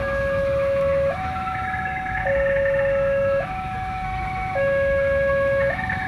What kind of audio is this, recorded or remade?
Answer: remade